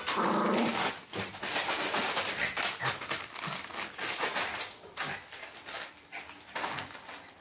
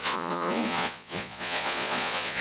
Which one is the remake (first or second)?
second